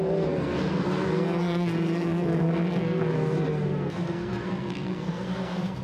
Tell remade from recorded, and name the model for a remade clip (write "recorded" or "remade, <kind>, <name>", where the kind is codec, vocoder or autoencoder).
remade, codec, SNAC